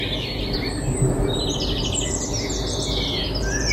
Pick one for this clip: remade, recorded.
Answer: recorded